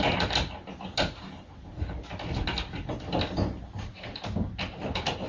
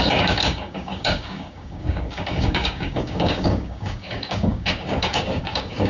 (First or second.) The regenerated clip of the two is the second